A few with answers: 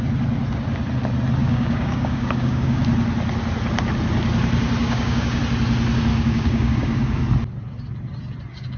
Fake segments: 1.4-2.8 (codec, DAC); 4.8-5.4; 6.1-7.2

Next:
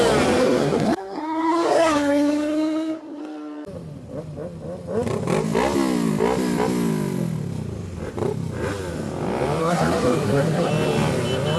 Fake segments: 0.4-3.2 (codec, SNAC); 9.6-10.7

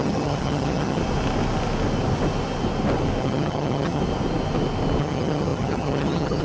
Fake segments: 0.0-1.0 (vocoder, HiFi-GAN); 3.2-4.0; 5.0-6.4

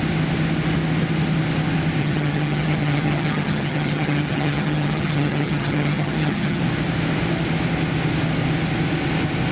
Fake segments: 2.0-6.6 (vocoder, HiFi-GAN)